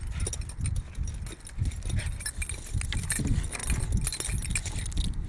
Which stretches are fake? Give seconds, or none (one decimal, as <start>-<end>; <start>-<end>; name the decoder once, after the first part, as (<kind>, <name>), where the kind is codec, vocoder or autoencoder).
none